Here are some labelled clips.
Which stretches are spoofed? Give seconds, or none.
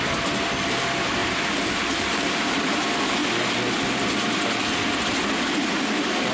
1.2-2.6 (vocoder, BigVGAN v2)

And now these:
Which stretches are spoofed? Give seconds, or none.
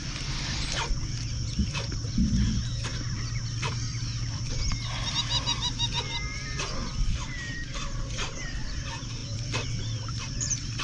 0.0-10.8 (vocoder, BigVGAN v2)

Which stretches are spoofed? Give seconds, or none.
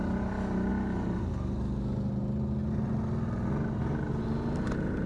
none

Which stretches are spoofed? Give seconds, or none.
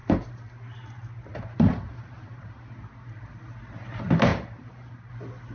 0.0-0.6 (vocoder, BigVGAN v2); 1.3-2.7; 4.3-5.1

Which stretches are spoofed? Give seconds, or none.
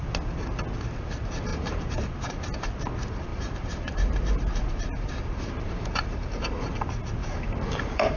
1.5-2.4 (vocoder, BigVGAN v2); 3.3-6.8; 7.2-8.2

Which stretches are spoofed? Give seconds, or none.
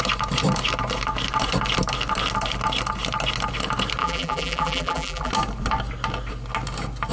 4.0-5.3 (vocoder, BigVGAN v2)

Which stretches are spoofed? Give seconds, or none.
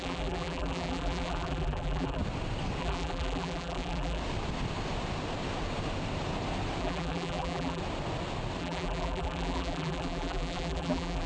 0.0-2.2 (vocoder, BigVGAN v2); 2.8-4.2; 6.8-7.8; 8.6-11.3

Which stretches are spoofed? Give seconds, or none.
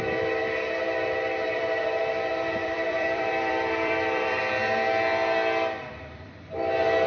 1.4-2.0 (vocoder, BigVGAN v2); 2.6-4.4